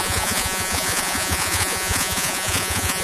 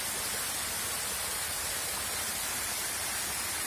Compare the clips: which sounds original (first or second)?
second